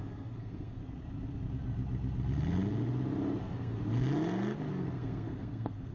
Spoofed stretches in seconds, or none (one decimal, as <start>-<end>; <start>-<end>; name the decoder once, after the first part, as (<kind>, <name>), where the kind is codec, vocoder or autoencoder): 0.0-0.8 (codec, SNAC); 3.4-3.8; 4.7-5.9